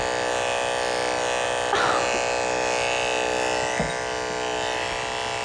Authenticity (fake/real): real